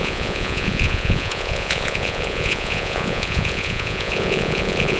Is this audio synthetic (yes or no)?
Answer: yes